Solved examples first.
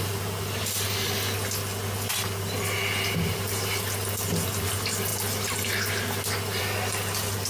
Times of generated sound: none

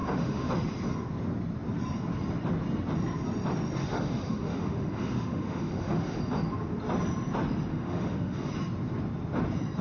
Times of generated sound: 0.0-0.5 (autoencoder, DAC-VAE); 3.8-6.2; 7.7-8.5